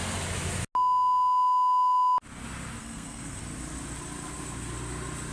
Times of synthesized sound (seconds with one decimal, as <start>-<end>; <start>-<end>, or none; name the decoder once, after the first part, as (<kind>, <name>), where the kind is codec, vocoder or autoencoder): 2.8-3.4 (codec, SNAC)

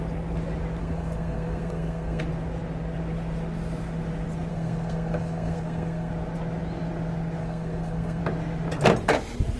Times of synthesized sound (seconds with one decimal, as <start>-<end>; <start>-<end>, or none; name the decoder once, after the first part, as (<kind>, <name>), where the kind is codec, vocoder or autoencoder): 0.8-2.2 (codec, SNAC); 4.5-6.1; 7.4-8.2

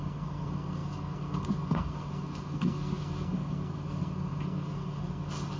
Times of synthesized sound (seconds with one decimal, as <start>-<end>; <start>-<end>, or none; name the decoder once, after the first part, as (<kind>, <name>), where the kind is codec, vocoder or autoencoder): 0.0-5.6 (codec, SNAC)

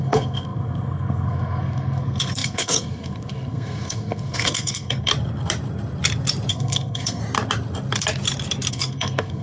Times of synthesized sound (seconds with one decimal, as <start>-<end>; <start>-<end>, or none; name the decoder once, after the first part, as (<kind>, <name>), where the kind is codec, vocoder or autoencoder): 0.0-5.1 (codec, SNAC); 6.5-7.2; 8.7-9.4

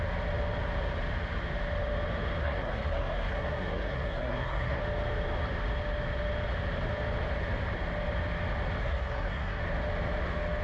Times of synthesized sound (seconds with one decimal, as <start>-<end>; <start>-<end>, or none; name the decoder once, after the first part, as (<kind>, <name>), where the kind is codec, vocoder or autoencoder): 2.4-4.8 (codec, SNAC); 8.8-9.6